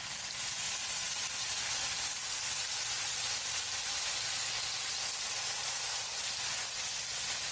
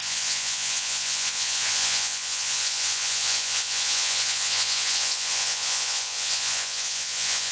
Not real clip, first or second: second